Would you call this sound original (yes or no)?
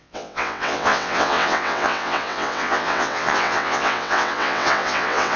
no